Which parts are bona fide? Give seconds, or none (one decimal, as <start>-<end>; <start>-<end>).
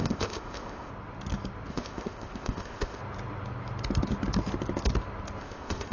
0.9-1.7; 3.0-5.4